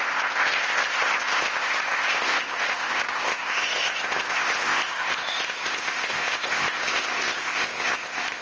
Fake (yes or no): yes